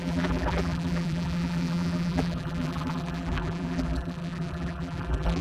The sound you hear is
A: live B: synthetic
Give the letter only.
B